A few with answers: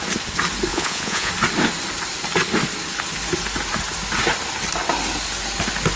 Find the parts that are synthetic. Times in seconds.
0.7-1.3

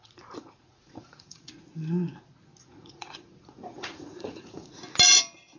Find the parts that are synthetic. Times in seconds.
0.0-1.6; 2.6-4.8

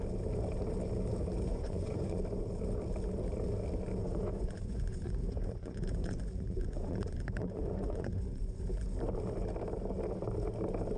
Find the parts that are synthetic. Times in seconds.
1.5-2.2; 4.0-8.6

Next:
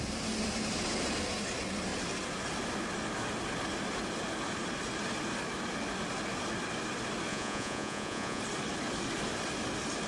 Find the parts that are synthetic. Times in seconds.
7.3-8.4